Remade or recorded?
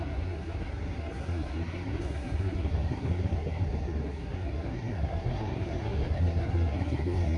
remade